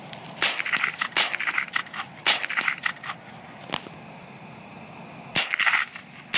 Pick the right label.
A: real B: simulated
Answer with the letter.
A